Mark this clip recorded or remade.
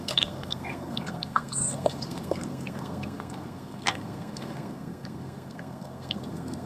remade